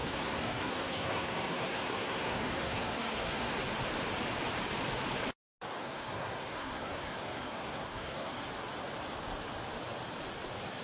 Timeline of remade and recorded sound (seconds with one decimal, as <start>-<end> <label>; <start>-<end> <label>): 0.0-3.6 remade; 3.6-5.8 recorded; 5.8-8.5 remade; 8.5-10.8 recorded